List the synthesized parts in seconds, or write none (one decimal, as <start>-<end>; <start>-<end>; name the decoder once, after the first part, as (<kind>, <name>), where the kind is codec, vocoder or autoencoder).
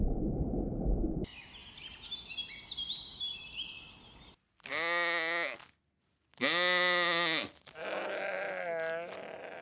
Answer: none